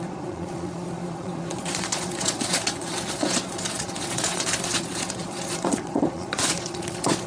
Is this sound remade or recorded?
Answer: remade